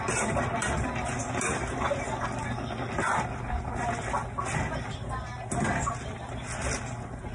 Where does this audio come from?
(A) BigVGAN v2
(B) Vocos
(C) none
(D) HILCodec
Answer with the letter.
C